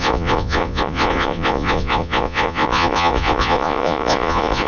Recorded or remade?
remade